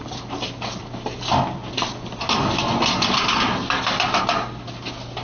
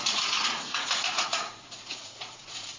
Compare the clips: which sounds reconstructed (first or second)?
second